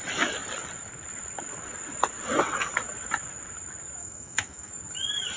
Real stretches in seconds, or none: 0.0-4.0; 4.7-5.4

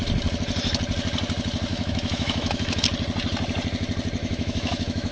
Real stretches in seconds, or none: 0.0-1.7; 2.8-4.2

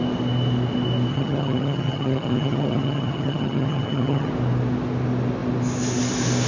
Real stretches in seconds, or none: 0.0-1.1; 4.3-6.5

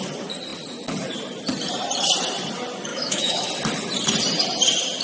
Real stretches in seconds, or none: 0.0-2.9; 3.5-5.0

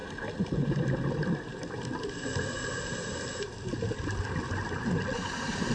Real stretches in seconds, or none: 0.0-5.7

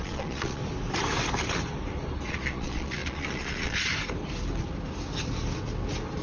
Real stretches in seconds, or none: 0.6-2.3; 3.9-6.2

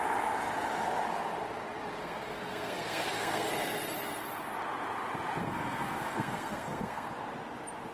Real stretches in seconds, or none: 0.0-2.0; 3.5-5.4; 7.1-7.9